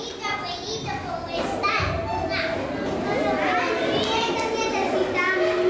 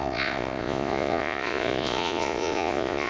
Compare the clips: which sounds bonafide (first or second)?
first